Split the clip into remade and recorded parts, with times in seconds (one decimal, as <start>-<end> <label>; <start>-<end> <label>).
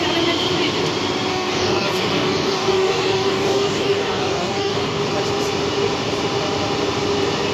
0.0-1.3 recorded; 1.3-5.0 remade; 5.0-7.5 recorded